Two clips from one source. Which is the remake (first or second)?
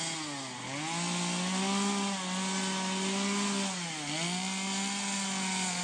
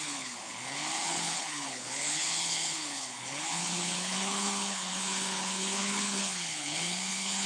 second